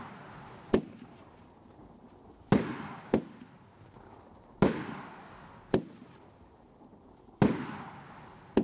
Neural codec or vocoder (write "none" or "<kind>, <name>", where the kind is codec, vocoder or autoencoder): none